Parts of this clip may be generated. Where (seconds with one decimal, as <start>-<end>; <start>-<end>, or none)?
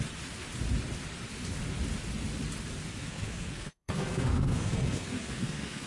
3.0-5.9